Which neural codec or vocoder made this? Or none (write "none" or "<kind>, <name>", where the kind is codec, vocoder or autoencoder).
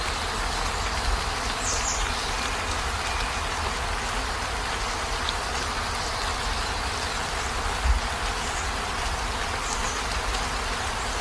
none